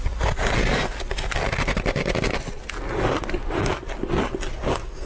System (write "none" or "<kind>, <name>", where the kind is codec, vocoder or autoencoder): none